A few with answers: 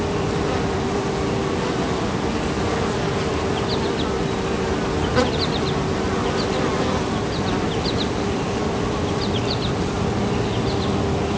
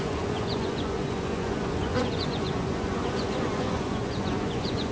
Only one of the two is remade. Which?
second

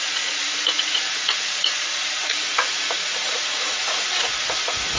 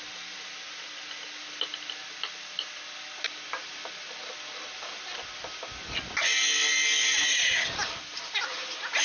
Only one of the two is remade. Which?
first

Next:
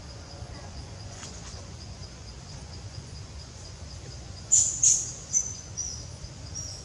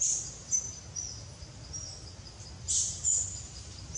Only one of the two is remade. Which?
first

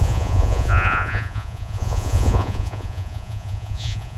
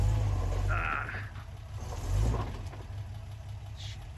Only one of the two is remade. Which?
first